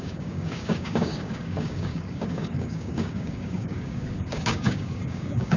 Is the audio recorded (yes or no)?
no